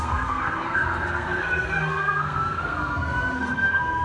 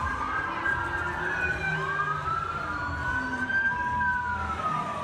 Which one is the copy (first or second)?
first